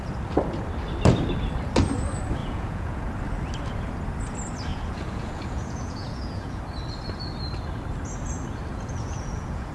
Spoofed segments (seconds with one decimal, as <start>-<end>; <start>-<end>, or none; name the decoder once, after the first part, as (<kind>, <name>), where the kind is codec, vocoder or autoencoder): 2.4-3.1 (vocoder, Vocos); 4.7-6.6; 8.7-9.7